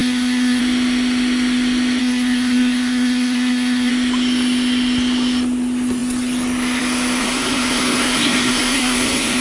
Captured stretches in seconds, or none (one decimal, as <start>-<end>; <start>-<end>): 0.6-2.0; 3.9-7.2